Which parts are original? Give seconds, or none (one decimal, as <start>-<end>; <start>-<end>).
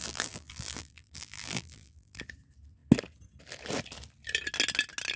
2.2-5.2